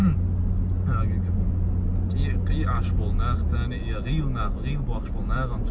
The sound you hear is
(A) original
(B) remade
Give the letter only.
A